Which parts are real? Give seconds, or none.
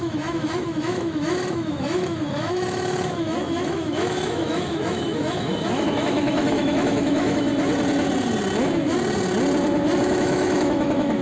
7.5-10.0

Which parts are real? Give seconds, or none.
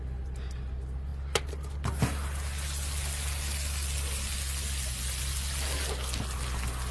0.0-6.9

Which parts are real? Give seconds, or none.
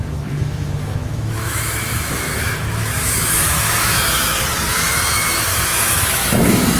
4.3-4.9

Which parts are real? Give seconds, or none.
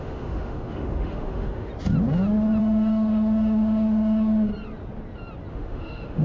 1.7-2.6; 4.5-5.5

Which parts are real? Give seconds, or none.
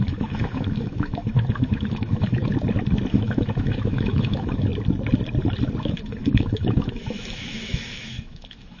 2.5-3.1; 4.7-5.8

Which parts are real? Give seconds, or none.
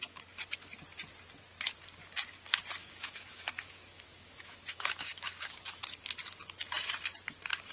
0.0-2.8; 5.8-7.7